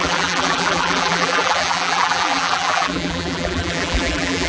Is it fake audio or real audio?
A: fake